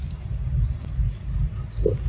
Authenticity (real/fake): real